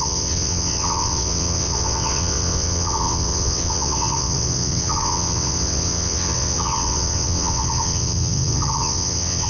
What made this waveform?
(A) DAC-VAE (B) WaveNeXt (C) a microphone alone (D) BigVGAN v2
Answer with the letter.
B